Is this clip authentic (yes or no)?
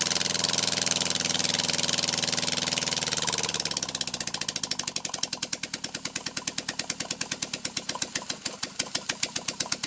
yes